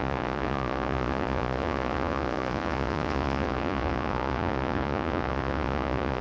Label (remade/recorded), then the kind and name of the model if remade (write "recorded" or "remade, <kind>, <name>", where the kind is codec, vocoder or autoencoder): remade, vocoder, Vocos